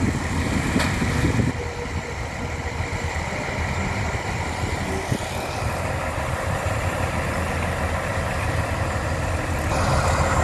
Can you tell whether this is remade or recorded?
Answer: recorded